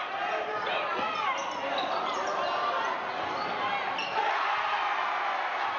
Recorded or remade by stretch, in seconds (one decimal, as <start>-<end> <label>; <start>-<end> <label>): 0.0-5.8 recorded